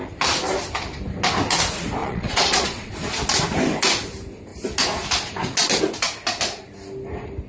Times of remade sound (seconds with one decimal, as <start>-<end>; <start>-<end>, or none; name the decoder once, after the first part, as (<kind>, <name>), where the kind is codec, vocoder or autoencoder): 2.0-2.9 (vocoder, Vocos)